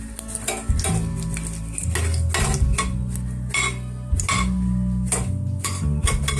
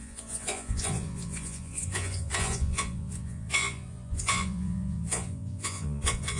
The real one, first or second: first